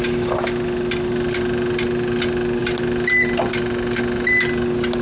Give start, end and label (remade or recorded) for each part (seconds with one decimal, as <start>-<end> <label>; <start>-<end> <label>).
0.0-5.0 recorded